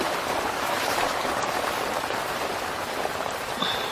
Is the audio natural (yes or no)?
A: no